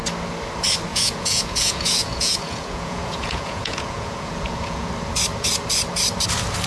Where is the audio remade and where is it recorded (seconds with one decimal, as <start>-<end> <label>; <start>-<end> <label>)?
0.0-0.9 recorded; 0.9-4.9 remade; 4.9-6.7 recorded

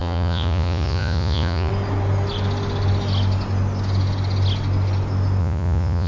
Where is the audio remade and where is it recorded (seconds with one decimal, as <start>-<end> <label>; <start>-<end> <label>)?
0.0-1.7 remade; 1.7-5.4 recorded; 5.4-6.1 remade

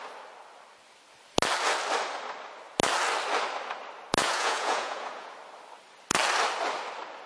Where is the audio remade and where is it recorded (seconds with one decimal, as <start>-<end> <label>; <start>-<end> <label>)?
0.0-4.2 recorded; 4.2-5.3 remade; 5.3-7.3 recorded

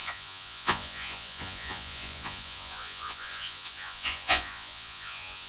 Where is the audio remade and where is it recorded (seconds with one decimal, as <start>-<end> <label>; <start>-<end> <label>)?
0.0-5.5 remade

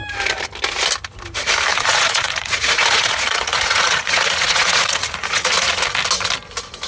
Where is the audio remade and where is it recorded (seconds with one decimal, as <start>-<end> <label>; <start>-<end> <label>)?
0.0-1.7 recorded; 1.7-5.8 remade; 5.8-6.9 recorded

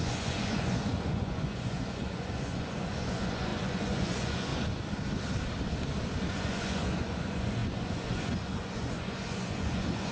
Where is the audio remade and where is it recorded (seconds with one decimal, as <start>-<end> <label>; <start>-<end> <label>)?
0.0-4.5 remade; 4.5-6.3 recorded; 6.3-10.1 remade

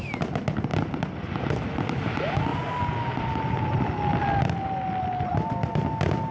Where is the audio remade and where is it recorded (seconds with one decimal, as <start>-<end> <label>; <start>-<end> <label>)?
0.0-6.3 recorded